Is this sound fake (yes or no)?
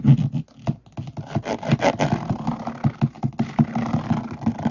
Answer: no